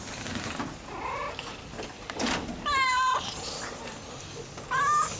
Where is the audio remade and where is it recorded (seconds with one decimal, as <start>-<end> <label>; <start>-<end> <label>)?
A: 0.0-5.2 recorded